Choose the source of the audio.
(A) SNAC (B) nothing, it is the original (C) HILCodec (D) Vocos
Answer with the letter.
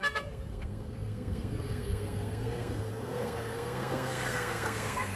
A